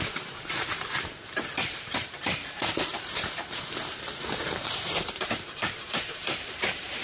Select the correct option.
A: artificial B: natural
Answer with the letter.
A